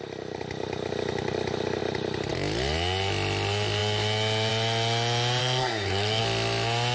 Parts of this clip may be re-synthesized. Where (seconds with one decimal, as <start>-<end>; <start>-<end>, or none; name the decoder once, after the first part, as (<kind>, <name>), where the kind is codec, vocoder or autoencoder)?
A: 5.4-6.2 (codec, SNAC)